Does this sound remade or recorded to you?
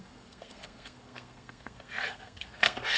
remade